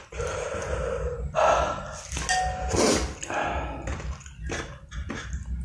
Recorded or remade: recorded